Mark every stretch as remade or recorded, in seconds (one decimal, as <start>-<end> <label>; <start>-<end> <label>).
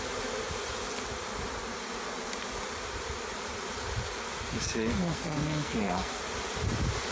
0.0-4.5 recorded; 4.5-6.2 remade; 6.2-7.1 recorded